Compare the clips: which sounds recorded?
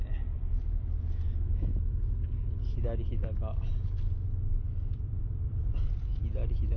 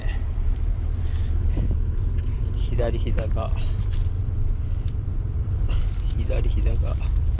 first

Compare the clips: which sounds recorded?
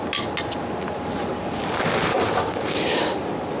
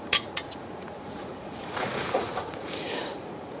first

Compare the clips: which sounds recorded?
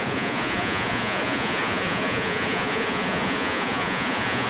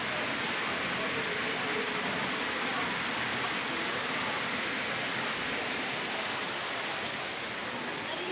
second